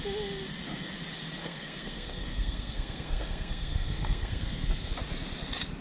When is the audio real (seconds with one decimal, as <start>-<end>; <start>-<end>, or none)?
0.0-1.4; 4.9-5.8